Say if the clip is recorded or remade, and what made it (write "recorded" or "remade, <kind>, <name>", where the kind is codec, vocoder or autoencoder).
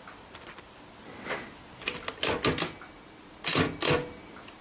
recorded